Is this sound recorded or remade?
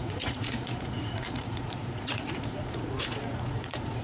remade